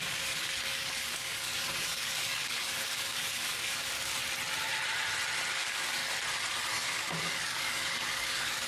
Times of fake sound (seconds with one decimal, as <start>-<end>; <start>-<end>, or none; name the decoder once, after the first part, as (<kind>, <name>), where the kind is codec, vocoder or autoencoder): 0.0-4.2 (codec, DAC); 5.5-6.0; 6.7-8.7